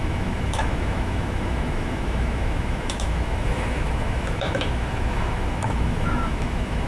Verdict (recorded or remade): remade